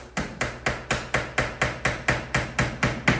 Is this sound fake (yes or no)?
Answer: no